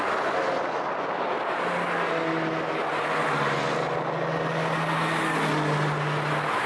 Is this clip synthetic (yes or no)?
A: no